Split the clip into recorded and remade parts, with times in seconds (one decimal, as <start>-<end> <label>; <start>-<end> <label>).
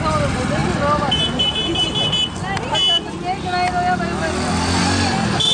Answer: 0.0-5.5 recorded